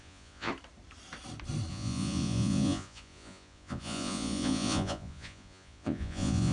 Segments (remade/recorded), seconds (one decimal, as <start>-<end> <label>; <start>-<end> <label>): 0.0-0.5 remade; 0.5-1.7 recorded; 1.7-6.5 remade